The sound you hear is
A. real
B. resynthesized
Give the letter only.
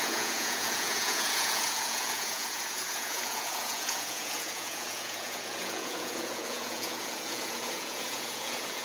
B